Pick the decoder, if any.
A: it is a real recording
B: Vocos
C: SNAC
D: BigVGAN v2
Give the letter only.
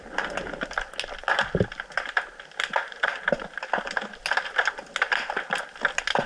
A